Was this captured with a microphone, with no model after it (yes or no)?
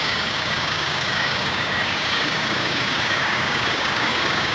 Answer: no